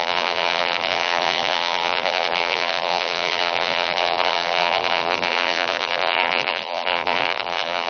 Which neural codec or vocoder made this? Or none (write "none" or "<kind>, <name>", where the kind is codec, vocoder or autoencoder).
vocoder, BigVGAN v2